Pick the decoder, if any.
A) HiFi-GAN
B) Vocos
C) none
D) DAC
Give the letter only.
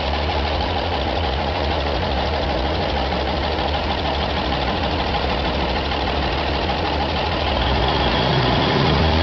B